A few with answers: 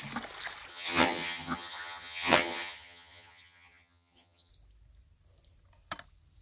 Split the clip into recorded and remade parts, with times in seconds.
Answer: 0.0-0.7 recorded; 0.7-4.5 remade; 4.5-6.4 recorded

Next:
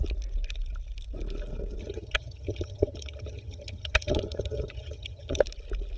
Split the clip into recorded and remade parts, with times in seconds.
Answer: 0.0-1.8 recorded; 1.8-5.4 remade; 5.4-6.0 recorded

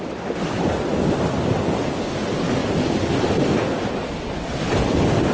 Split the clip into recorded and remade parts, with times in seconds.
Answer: 0.0-5.3 recorded

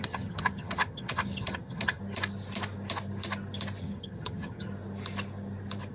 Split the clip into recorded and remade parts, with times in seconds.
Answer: 0.0-2.0 remade; 2.0-3.8 recorded; 3.8-4.7 remade; 4.7-5.9 recorded

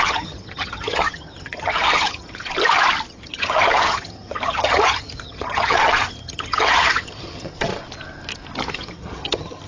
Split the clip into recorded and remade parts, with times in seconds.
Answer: 0.0-2.5 remade; 2.5-3.1 recorded; 3.1-7.7 remade; 7.7-8.7 recorded; 8.7-9.7 remade

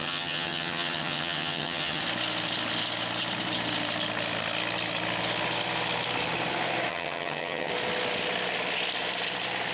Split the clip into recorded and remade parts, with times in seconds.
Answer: 0.0-2.0 remade; 2.0-6.9 recorded; 6.9-7.7 remade; 7.7-9.7 recorded